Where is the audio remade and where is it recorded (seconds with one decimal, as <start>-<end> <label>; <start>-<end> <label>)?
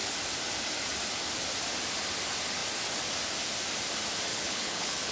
0.0-4.3 recorded; 4.3-5.1 remade